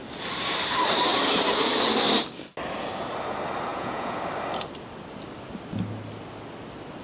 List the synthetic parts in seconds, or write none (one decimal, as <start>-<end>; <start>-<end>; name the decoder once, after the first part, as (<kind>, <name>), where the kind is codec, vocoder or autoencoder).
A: 3.7-4.2 (vocoder, Vocos)